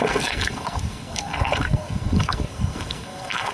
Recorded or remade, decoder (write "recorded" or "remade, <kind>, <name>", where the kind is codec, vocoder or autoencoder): remade, codec, SNAC